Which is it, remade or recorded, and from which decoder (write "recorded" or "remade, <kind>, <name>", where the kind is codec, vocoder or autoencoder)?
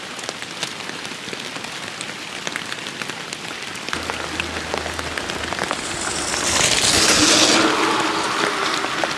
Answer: recorded